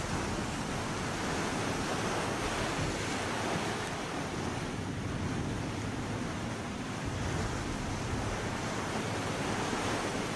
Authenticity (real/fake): real